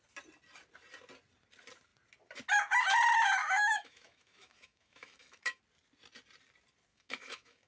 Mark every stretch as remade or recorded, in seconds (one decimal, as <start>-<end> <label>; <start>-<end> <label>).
0.0-3.4 recorded; 3.4-5.6 remade; 5.6-6.9 recorded; 6.9-7.7 remade